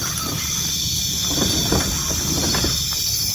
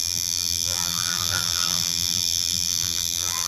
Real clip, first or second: first